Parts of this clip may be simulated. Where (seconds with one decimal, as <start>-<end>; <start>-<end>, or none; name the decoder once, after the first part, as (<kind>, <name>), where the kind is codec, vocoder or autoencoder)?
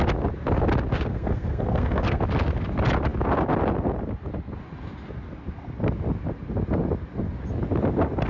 1.1-2.2 (codec, SNAC)